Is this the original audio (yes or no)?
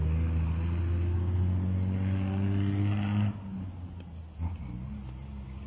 yes